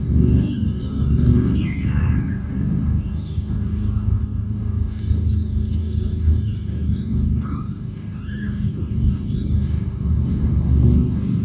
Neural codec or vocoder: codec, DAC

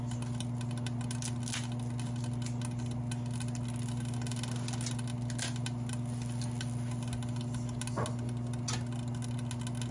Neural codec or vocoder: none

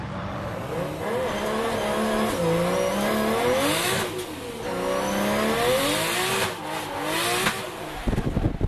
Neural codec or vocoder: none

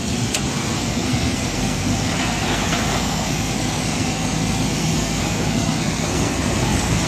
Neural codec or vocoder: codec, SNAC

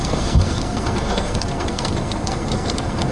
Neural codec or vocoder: codec, SNAC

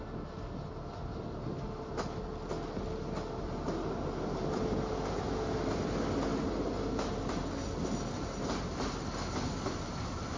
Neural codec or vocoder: none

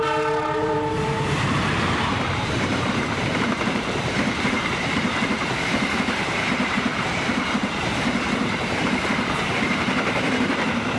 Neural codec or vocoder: vocoder, BigVGAN v2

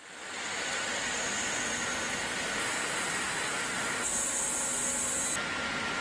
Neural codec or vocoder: none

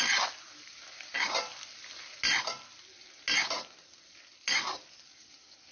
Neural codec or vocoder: none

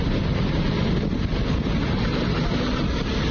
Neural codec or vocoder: none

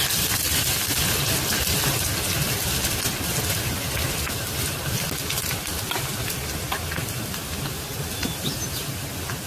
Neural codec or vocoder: none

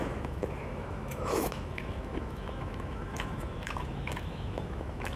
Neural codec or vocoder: autoencoder, DAC-VAE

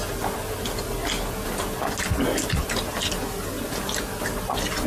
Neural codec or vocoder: none